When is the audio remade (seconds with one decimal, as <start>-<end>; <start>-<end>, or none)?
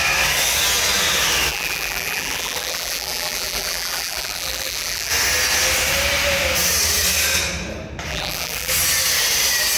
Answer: 1.5-5.1; 8.1-8.7